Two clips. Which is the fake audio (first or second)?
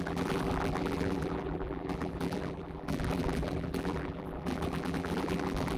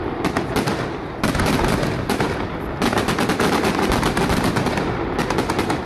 first